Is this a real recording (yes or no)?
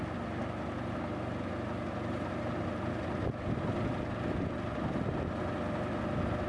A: yes